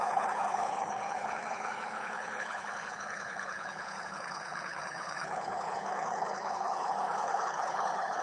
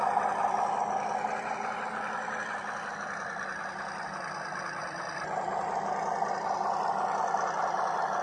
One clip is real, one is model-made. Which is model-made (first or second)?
first